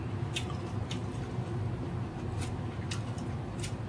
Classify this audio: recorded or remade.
recorded